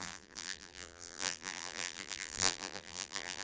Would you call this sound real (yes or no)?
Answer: no